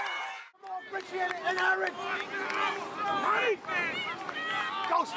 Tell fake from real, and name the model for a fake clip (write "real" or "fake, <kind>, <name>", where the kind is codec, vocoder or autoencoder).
real